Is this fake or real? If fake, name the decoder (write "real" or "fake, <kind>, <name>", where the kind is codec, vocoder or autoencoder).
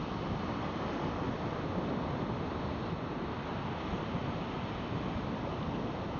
real